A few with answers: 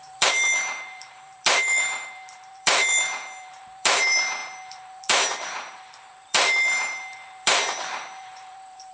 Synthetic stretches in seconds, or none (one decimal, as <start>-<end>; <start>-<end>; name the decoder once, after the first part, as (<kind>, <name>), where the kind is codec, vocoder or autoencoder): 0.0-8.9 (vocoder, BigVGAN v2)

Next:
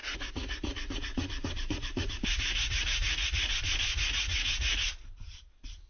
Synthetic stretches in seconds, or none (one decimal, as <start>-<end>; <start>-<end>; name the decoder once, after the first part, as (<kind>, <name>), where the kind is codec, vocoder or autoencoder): 0.0-3.5 (vocoder, Vocos); 3.9-4.9

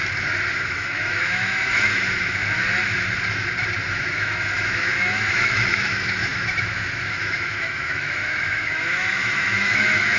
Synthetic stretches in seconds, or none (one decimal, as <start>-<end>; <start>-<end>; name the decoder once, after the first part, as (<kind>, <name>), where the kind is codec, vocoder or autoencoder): 0.5-2.4 (autoencoder, DAC-VAE); 3.9-10.2